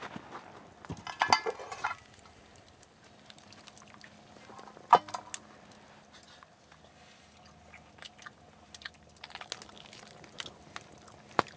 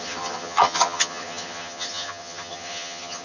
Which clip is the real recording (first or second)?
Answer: first